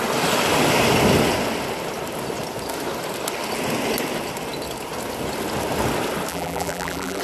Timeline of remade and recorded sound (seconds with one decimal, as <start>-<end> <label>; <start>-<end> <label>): 0.0-6.3 recorded; 6.3-7.2 remade